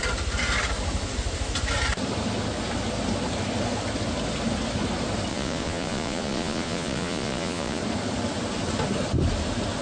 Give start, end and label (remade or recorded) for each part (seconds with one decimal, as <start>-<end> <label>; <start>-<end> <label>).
0.0-5.3 recorded; 5.3-7.8 remade; 7.8-9.8 recorded